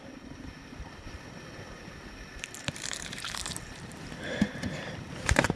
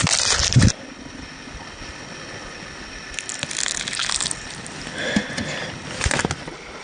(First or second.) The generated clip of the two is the first